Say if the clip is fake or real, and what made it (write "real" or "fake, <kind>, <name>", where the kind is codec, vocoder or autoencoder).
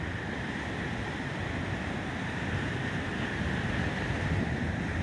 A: fake, vocoder, BigVGAN v2